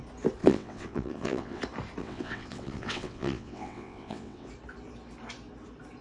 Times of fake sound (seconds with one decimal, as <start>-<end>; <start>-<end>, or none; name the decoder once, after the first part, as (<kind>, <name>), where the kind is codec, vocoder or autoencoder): 0.4-1.6 (vocoder, WaveNeXt); 2.0-4.5